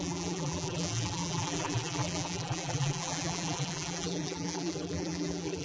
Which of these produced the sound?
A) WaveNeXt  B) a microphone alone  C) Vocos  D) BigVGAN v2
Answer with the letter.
D